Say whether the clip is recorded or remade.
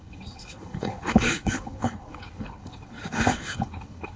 remade